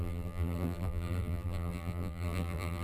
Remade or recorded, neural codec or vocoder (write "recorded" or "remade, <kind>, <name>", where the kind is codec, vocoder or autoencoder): remade, vocoder, BigVGAN v2